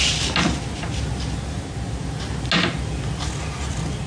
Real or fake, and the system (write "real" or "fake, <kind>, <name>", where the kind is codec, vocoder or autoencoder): real